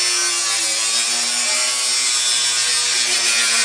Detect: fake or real real